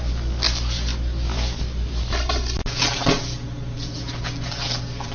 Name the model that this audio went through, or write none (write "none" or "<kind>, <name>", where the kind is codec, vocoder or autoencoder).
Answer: none